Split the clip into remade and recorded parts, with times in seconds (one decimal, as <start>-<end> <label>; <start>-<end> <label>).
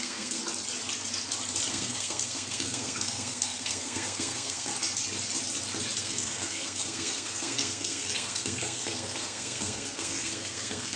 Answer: 0.0-0.4 remade; 0.4-1.7 recorded; 1.7-4.7 remade; 4.7-6.0 recorded; 6.0-11.0 remade